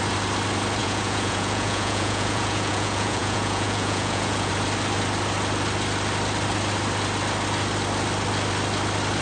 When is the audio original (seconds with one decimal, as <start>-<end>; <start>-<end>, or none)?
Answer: 0.0-0.8; 4.5-9.2